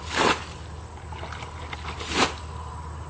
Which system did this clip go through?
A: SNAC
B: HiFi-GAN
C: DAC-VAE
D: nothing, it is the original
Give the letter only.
D